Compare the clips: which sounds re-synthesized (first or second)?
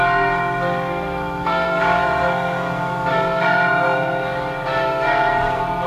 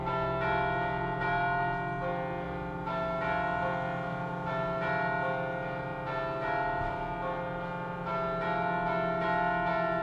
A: first